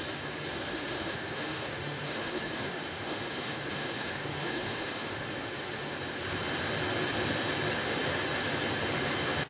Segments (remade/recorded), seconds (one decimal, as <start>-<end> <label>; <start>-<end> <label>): 0.0-0.7 recorded; 0.7-5.8 remade; 5.8-9.5 recorded